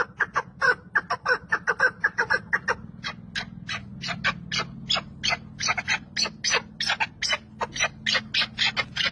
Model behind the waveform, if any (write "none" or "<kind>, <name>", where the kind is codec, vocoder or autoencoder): none